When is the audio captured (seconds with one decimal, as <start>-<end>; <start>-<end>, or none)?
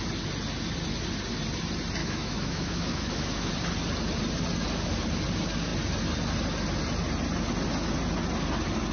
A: 0.0-2.0; 3.5-8.9